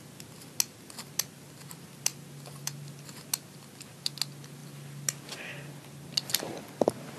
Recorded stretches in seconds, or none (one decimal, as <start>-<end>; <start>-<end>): 0.0-7.2